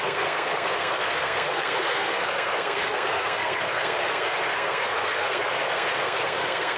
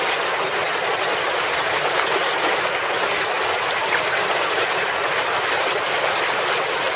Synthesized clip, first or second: first